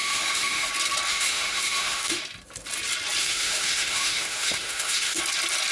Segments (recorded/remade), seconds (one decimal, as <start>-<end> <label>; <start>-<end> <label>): 0.0-0.7 remade; 0.7-1.1 recorded; 1.1-2.2 remade; 2.2-3.2 recorded; 3.2-5.2 remade; 5.2-5.7 recorded